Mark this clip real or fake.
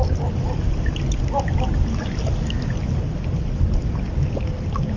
real